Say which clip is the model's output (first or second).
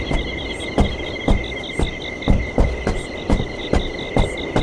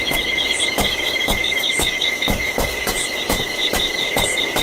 second